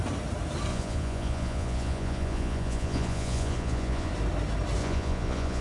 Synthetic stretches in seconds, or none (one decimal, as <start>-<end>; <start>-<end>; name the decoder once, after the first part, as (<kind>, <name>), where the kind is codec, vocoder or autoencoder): 0.7-4.1 (vocoder, Vocos); 4.8-5.6